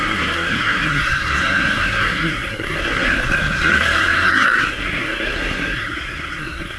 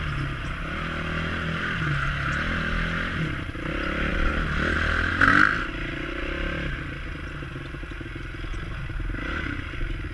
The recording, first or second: second